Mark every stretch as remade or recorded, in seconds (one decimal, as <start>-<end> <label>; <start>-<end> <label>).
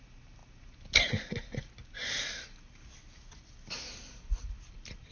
0.0-5.1 recorded